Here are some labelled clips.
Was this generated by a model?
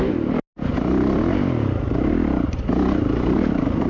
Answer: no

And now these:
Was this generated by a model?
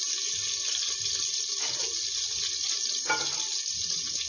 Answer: no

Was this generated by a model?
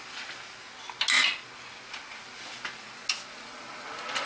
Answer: no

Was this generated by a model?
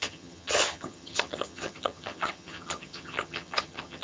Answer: yes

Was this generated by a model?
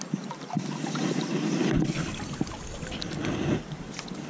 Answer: no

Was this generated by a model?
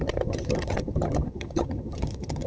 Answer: yes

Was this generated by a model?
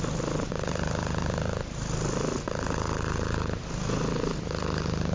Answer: no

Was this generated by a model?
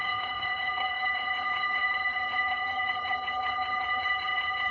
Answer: yes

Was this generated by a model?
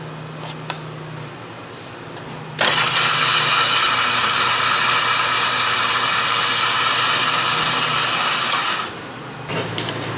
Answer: no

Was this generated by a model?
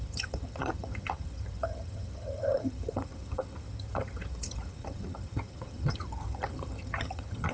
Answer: yes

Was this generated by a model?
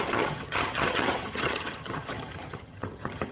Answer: yes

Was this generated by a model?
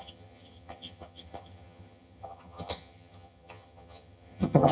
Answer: yes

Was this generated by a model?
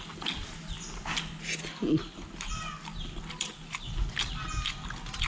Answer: no